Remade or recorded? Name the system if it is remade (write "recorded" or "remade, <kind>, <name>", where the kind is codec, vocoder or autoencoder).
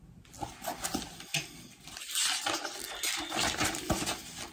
recorded